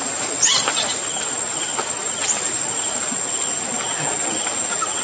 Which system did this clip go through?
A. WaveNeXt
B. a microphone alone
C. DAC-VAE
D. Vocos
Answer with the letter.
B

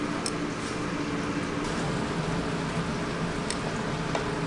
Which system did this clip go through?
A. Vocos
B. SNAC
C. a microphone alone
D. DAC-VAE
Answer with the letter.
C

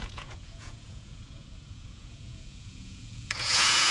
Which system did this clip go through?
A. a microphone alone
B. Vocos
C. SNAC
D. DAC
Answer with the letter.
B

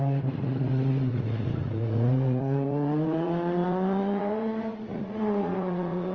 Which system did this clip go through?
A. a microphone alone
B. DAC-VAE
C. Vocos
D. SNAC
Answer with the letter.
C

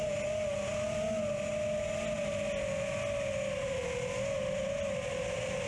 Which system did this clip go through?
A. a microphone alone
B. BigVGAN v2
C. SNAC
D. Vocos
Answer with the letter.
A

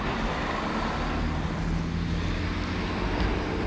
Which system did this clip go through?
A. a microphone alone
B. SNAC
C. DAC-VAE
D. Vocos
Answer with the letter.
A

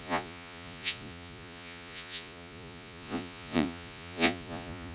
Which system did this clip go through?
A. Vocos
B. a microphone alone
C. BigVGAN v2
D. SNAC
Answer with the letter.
A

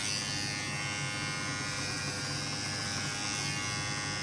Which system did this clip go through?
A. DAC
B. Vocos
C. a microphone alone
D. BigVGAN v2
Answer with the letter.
C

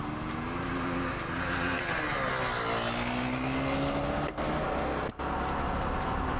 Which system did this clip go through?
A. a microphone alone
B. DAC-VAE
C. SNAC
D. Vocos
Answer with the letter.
A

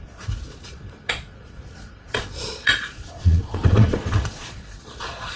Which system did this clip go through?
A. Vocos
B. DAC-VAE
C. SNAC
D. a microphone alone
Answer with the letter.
A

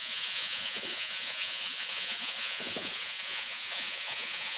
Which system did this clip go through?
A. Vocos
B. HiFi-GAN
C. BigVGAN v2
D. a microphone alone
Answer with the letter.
A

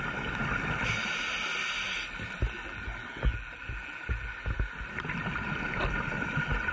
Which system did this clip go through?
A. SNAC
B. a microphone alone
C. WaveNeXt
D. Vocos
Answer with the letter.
B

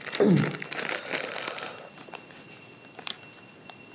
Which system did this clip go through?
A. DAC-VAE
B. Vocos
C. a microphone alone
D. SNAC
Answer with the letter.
C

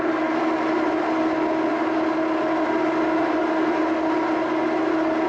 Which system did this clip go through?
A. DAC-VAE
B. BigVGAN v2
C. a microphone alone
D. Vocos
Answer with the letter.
C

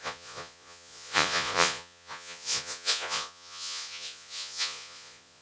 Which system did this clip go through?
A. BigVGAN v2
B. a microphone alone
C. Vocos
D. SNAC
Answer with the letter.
C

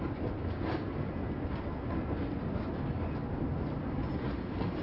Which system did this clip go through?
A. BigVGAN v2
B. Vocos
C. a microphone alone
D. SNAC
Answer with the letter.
C